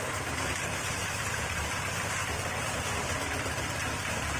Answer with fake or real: real